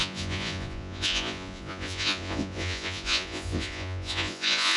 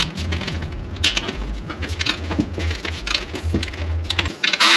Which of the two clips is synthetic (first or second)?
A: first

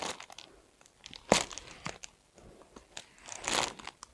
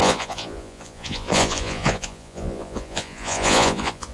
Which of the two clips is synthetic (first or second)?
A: second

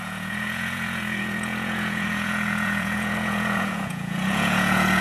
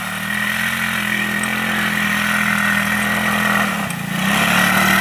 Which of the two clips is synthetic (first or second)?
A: first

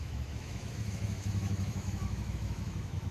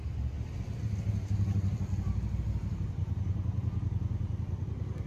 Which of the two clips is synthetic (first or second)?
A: first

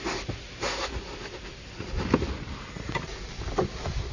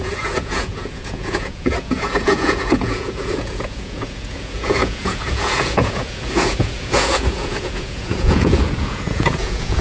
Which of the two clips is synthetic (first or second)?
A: second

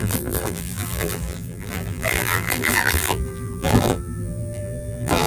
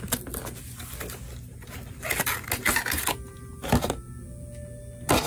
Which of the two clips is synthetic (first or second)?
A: first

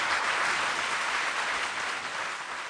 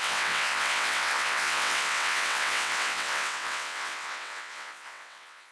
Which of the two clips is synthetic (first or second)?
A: second